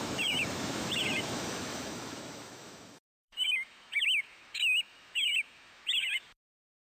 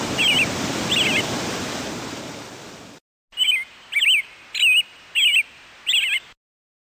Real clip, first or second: second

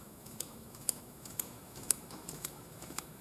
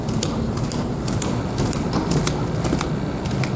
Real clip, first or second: second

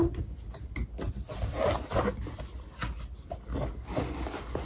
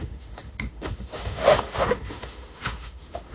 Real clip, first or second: first